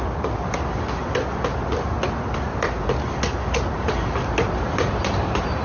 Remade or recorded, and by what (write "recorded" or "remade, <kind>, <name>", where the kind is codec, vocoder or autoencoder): recorded